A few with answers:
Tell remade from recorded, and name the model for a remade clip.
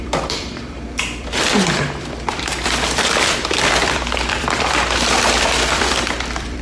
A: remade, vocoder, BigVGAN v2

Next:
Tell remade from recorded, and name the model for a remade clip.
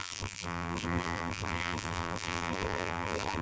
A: remade, vocoder, BigVGAN v2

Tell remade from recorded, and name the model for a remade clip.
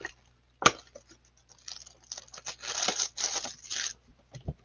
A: recorded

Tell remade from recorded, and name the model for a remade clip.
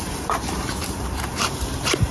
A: remade, vocoder, BigVGAN v2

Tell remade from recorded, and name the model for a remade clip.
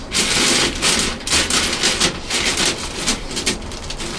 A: remade, vocoder, BigVGAN v2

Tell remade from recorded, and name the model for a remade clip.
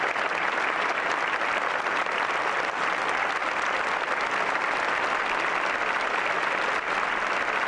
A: recorded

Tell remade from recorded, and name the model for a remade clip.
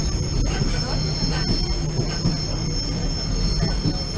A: recorded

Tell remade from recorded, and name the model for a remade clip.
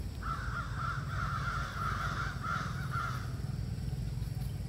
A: recorded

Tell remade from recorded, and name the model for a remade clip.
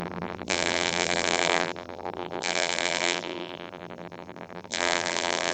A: remade, vocoder, BigVGAN v2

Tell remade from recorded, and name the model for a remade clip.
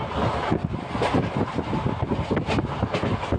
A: recorded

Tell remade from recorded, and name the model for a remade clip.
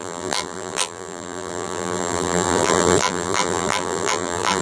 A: remade, vocoder, BigVGAN v2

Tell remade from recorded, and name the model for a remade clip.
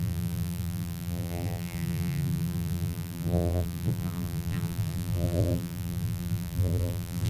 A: remade, vocoder, BigVGAN v2